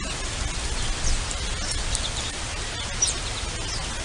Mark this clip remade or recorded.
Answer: recorded